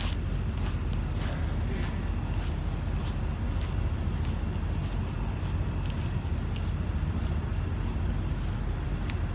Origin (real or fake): real